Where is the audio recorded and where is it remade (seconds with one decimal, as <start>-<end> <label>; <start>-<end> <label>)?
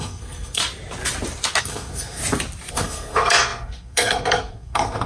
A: 0.0-0.6 remade; 0.6-1.6 recorded; 1.6-2.2 remade; 2.2-2.7 recorded; 2.7-5.1 remade